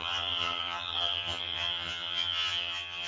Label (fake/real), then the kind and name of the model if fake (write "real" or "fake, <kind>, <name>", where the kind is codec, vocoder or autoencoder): fake, vocoder, HiFi-GAN